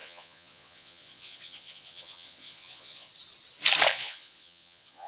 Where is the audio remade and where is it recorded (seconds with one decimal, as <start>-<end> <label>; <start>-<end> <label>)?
0.0-3.1 remade; 3.1-3.9 recorded; 3.9-5.1 remade